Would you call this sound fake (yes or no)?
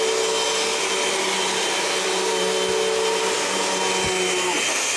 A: no